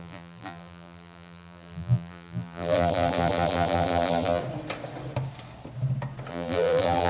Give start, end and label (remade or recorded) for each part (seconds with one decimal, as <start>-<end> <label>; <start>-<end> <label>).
0.0-4.4 remade; 4.4-6.3 recorded; 6.3-7.1 remade

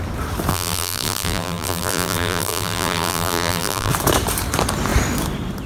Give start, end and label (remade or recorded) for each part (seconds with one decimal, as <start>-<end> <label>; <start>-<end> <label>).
0.0-0.5 recorded; 0.5-3.9 remade; 3.9-5.7 recorded

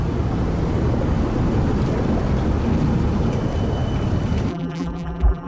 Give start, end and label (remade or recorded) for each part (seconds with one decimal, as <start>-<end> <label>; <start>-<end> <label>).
0.0-4.5 recorded; 4.5-5.5 remade